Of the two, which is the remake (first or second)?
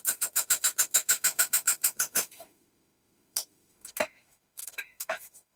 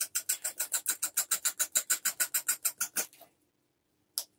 first